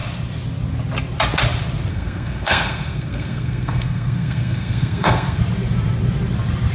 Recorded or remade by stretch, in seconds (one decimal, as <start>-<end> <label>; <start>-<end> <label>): 0.0-1.9 recorded; 1.9-5.4 remade; 5.4-6.7 recorded